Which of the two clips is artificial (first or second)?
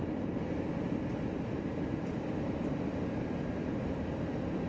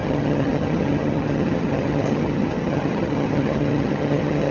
second